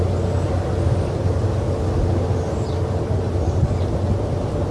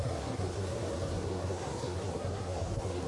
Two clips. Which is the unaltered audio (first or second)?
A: first